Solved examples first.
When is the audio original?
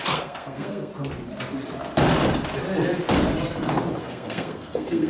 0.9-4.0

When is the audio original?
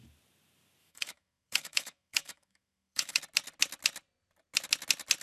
0.0-0.8; 3.2-5.2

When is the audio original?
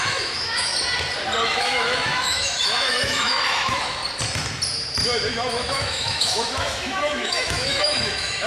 0.7-1.5; 4.0-5.3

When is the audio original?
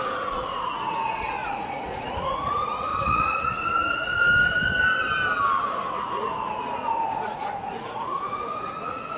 4.1-5.6